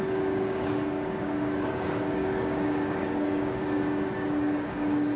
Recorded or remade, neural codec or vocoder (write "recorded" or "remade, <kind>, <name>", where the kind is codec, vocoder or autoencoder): remade, codec, DAC